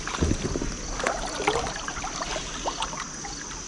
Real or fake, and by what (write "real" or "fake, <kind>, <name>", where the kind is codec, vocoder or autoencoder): real